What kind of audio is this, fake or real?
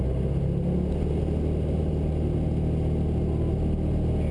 real